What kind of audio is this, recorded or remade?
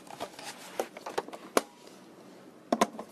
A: recorded